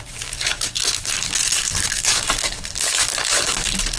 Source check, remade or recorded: remade